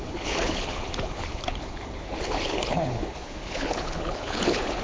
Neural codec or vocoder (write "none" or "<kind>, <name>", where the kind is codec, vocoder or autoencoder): codec, HILCodec